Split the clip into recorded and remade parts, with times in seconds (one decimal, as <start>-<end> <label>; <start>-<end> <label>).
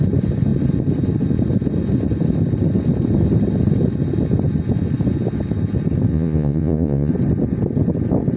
0.0-6.1 recorded; 6.1-7.1 remade; 7.1-8.4 recorded